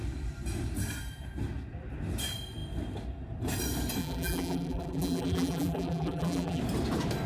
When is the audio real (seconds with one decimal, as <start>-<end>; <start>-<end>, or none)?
0.0-4.0; 6.6-7.3